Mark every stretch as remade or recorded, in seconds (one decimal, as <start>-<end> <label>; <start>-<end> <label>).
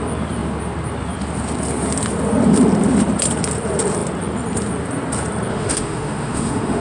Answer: 0.0-5.5 recorded; 5.5-6.8 remade